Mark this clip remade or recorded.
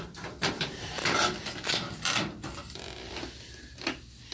remade